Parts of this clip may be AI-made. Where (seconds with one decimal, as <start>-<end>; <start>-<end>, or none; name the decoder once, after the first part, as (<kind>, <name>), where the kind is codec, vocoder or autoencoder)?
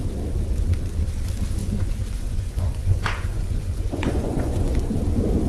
1.6-4.9 (vocoder, Vocos)